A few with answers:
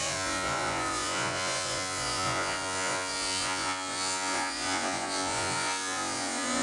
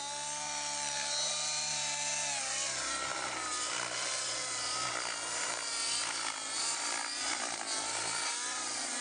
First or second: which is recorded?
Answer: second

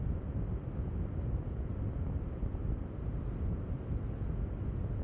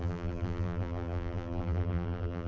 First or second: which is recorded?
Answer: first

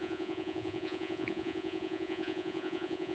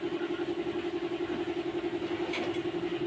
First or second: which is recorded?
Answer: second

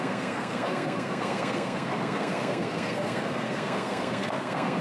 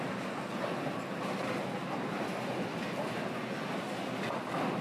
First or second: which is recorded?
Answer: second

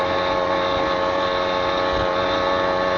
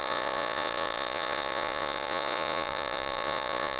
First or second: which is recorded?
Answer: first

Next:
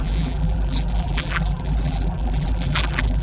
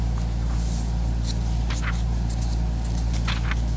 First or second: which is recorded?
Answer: second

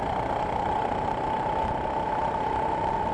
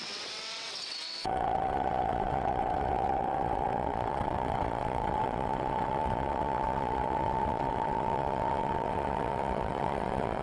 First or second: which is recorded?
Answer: first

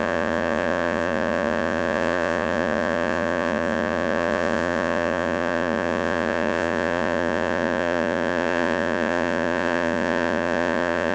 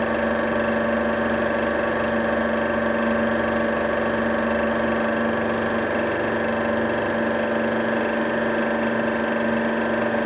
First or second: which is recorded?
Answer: second